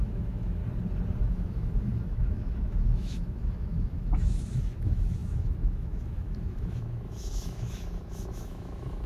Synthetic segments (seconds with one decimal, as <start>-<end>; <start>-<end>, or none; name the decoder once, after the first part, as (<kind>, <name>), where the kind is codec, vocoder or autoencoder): 0.0-0.6 (autoencoder, DAC-VAE); 1.2-9.1